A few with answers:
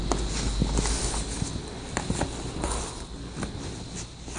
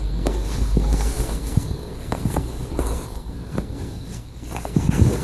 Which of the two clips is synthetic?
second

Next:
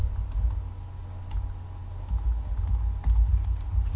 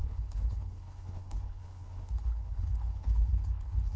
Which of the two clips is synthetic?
second